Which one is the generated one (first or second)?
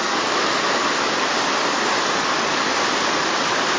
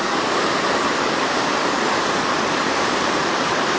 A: second